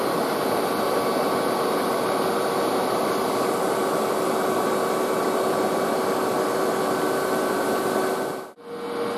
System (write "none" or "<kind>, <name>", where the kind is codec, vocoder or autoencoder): none